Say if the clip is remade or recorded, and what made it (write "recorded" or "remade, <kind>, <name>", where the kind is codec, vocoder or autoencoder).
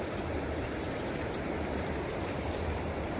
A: remade, vocoder, BigVGAN v2